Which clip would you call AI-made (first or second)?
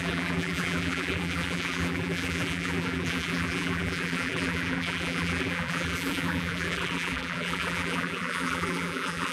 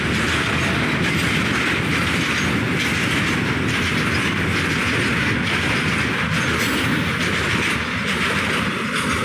first